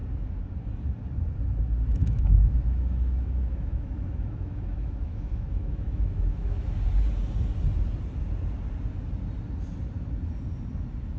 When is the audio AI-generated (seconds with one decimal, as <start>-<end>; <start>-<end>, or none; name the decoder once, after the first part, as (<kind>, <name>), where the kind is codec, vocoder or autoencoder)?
2.0-6.7 (autoencoder, DAC-VAE)